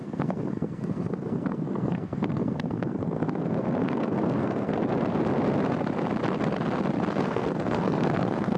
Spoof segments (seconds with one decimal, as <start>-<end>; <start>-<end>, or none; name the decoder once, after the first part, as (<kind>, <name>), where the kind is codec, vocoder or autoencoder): 0.0-4.7 (codec, SNAC); 7.1-8.6